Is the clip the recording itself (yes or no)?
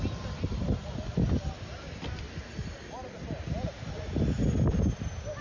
yes